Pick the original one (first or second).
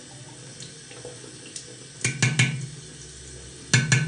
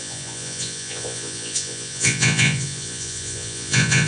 first